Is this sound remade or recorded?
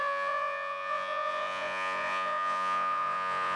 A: remade